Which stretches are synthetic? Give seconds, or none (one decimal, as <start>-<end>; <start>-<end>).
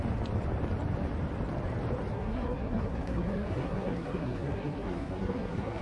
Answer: 2.1-5.8